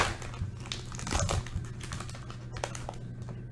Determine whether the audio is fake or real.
real